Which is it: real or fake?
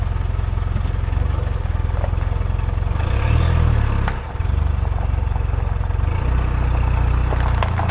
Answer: real